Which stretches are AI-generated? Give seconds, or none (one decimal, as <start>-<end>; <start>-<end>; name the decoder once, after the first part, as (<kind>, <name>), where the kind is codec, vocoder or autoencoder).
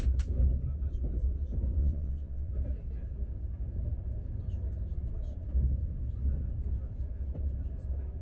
1.8-2.5 (vocoder, WaveNeXt)